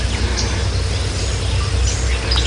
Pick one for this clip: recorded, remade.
recorded